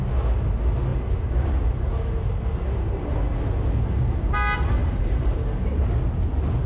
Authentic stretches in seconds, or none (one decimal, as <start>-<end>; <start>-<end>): 0.0-4.8; 5.8-6.7